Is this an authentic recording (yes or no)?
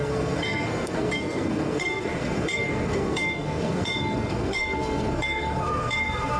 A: no